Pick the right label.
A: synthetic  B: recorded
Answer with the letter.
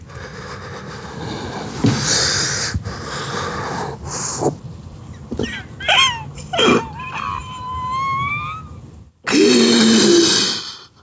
B